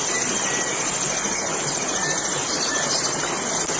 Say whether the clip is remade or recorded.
recorded